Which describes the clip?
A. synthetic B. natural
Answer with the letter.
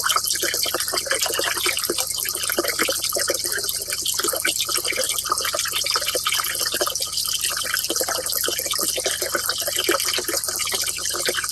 B